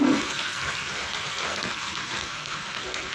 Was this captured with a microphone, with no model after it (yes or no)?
no